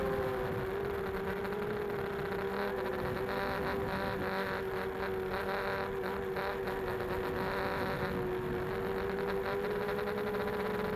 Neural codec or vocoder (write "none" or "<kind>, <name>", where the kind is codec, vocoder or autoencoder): none